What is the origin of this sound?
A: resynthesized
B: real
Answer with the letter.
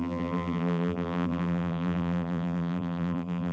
A